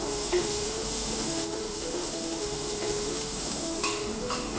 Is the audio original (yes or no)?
no